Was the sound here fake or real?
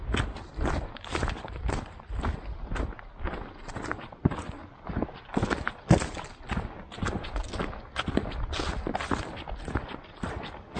real